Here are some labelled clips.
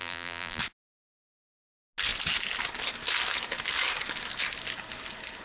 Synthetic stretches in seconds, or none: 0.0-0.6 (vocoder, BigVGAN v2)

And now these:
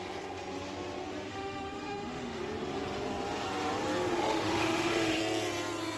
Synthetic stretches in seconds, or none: 1.3-2.4 (autoencoder, DAC-VAE); 4.1-5.2

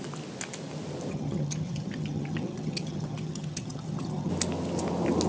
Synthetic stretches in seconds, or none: 1.1-4.3 (vocoder, HiFi-GAN)

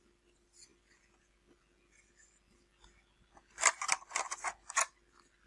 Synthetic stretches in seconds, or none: none

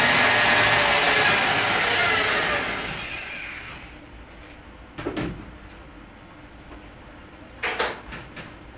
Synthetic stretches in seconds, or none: none